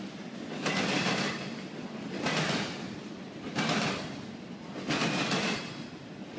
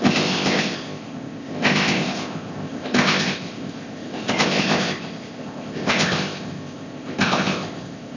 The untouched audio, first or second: first